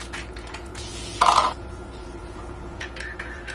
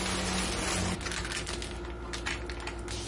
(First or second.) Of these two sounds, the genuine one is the second